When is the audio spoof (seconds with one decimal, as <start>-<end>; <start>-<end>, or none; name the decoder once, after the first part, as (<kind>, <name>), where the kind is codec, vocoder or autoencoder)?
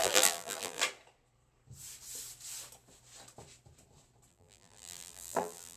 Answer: 0.0-0.8 (vocoder, BigVGAN v2); 4.3-5.8